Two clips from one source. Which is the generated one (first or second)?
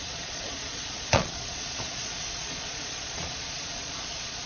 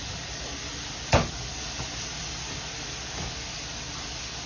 first